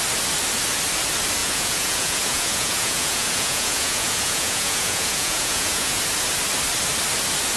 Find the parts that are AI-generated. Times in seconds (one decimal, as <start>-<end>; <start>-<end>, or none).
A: 1.4-6.0